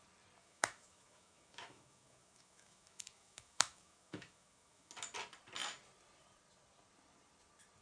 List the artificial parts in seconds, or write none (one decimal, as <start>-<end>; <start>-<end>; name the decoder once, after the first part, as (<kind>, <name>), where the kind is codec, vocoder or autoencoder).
0.4-4.9 (autoencoder, DAC-VAE)